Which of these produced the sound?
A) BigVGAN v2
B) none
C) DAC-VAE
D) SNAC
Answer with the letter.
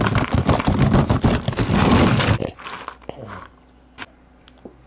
B